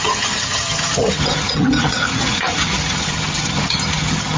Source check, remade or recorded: remade